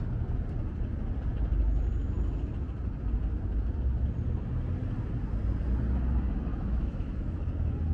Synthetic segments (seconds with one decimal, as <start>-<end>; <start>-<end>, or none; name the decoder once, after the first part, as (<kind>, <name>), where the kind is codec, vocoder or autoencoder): 6.5-7.4 (autoencoder, DAC-VAE)